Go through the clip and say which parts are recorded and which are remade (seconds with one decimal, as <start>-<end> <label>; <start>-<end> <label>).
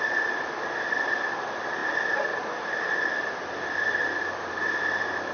0.0-5.3 recorded